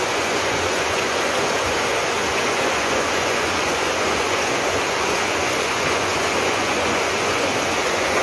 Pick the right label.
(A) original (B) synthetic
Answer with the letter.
B